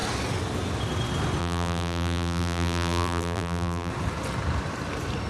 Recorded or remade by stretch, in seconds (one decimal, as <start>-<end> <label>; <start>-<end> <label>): 0.0-1.4 recorded; 1.4-3.9 remade; 3.9-5.3 recorded